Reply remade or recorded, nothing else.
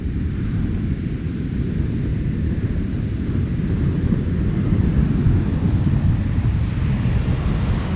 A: recorded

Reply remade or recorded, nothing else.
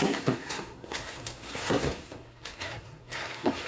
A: remade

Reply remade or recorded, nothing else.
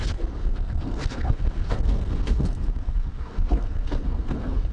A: remade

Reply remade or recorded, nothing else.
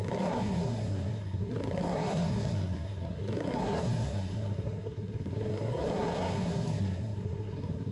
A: remade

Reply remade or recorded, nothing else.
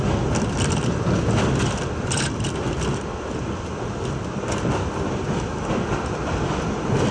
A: recorded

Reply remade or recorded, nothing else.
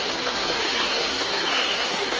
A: remade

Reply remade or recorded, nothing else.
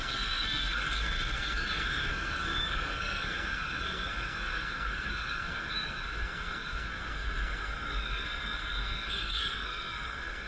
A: remade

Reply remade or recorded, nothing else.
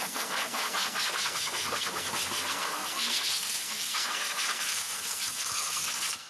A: remade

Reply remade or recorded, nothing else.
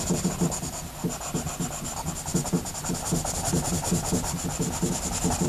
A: recorded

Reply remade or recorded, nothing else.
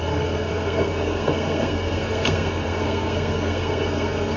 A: remade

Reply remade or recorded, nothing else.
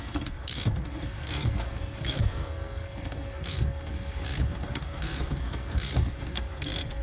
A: remade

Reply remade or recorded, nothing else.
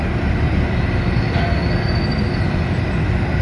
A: recorded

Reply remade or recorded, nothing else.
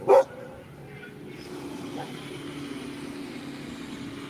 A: recorded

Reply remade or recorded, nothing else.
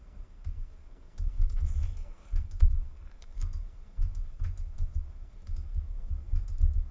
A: remade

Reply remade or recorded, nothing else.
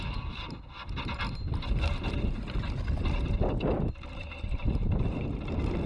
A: recorded